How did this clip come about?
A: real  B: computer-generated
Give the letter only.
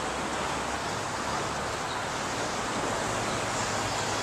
A